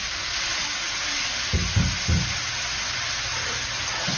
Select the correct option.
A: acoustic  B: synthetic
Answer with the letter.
A